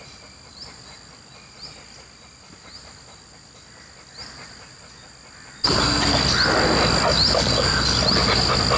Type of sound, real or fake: real